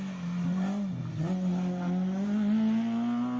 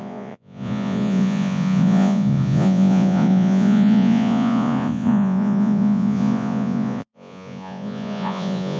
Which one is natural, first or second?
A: first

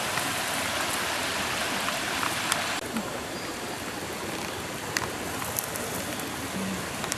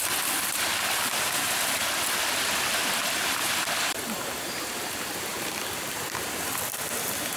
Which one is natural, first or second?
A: first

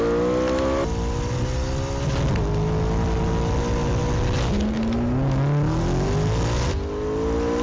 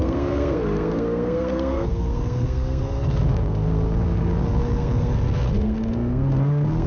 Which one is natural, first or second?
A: first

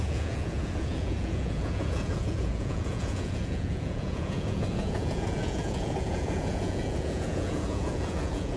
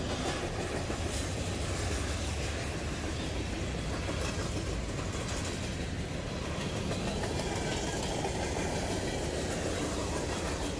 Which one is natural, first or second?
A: second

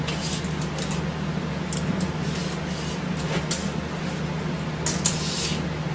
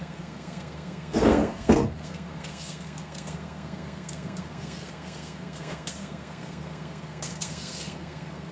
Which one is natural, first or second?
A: first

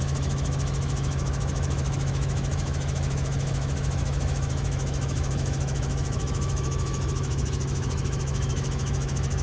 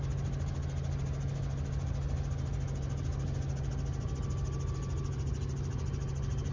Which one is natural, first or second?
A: second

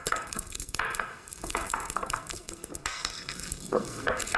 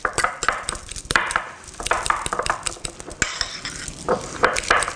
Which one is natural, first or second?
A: second